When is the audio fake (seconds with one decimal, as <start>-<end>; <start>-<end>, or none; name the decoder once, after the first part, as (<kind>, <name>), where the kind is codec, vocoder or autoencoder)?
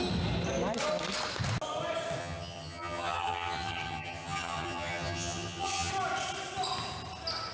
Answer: 2.2-5.9 (vocoder, HiFi-GAN)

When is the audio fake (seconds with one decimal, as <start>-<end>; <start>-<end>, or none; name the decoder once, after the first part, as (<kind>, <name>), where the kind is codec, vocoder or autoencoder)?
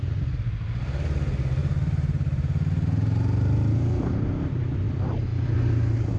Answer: 1.6-4.3 (vocoder, BigVGAN v2)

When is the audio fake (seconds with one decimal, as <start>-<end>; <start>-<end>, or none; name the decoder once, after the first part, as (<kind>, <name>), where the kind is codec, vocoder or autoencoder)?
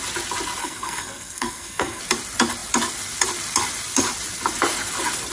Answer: 0.6-2.0 (codec, SNAC)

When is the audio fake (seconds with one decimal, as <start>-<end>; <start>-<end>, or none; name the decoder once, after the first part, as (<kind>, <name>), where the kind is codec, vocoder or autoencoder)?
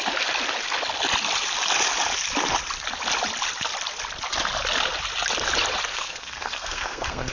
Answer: 5.9-7.3 (codec, SNAC)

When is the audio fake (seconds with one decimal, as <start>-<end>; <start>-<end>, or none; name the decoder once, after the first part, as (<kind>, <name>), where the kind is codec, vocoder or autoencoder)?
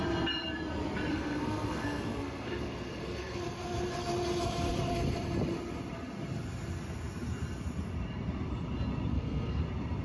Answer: 1.1-3.4 (codec, SNAC); 9.1-9.6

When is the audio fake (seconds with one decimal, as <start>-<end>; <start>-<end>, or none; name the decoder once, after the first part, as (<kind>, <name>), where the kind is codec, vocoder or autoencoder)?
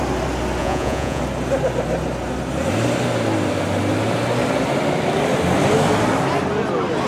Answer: 0.6-1.2 (vocoder, Vocos)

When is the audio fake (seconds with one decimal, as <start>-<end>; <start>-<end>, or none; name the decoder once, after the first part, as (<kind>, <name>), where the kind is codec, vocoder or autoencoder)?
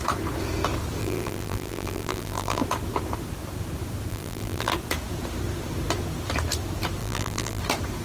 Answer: 1.0-2.6 (vocoder, BigVGAN v2); 4.1-4.7; 7.0-7.6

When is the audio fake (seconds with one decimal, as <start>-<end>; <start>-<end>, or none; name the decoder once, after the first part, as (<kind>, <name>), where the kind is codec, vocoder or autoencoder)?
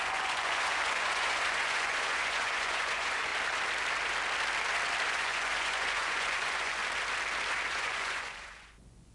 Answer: 0.0-3.3 (vocoder, Vocos); 5.1-6.8; 7.7-9.1